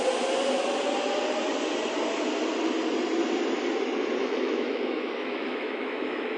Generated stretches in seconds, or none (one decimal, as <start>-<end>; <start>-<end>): 4.2-6.4